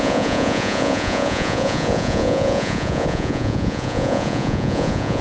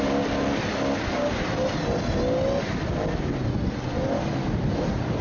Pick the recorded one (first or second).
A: second